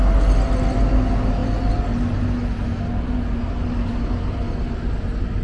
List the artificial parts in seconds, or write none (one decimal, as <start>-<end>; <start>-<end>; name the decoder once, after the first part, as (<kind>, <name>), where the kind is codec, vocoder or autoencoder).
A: none